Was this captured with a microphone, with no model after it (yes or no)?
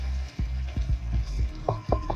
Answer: no